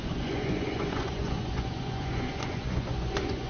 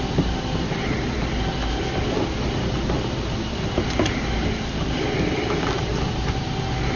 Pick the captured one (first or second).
second